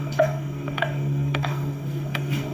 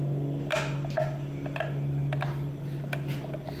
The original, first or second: second